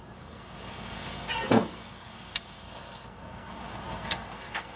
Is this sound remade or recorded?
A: remade